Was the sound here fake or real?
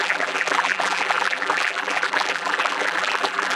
fake